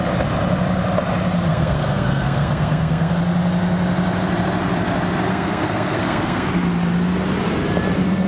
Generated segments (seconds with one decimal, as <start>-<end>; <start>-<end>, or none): 1.5-3.1; 5.3-6.5